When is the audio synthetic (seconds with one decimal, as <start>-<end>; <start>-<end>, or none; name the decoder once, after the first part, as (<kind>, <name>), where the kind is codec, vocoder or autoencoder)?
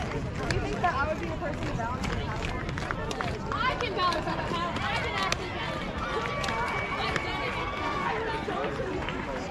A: 7.6-8.1 (codec, SNAC)